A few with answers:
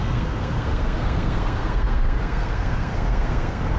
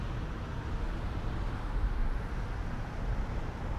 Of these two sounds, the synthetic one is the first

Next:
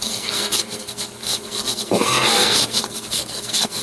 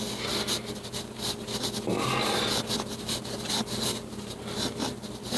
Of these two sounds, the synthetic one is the first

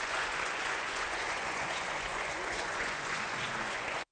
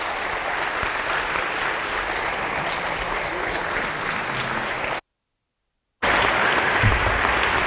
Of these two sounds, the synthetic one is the first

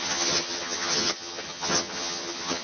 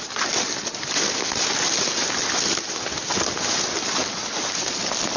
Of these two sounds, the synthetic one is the first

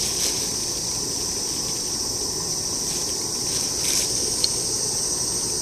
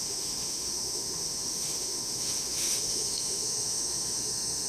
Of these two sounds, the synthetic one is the second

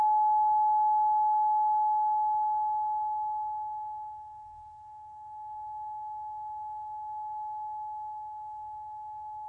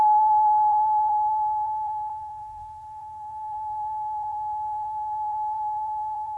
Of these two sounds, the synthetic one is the second